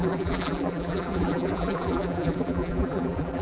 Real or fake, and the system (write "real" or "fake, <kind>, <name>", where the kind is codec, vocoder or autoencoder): fake, vocoder, BigVGAN v2